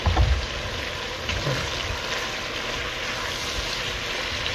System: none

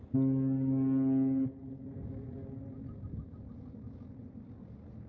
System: none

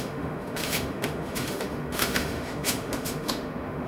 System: autoencoder, DAC-VAE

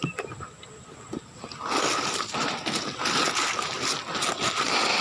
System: none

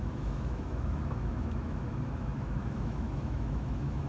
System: autoencoder, DAC-VAE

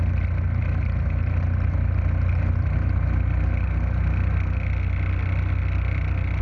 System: none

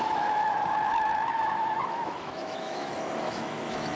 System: autoencoder, DAC-VAE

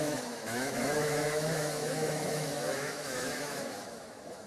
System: autoencoder, DAC-VAE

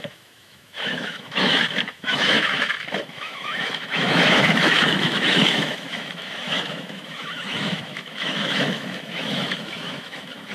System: autoencoder, DAC-VAE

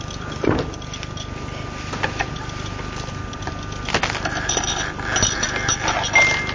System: none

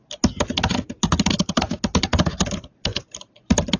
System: none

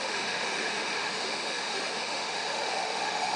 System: autoencoder, DAC-VAE